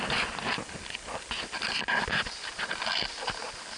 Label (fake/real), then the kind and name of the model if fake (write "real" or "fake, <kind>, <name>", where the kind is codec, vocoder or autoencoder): real